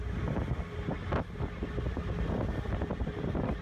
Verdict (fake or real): real